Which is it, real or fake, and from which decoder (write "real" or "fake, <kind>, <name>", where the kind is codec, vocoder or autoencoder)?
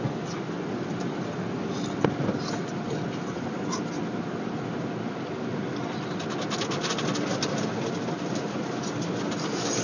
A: real